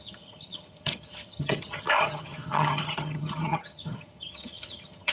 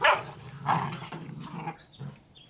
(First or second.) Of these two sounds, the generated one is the first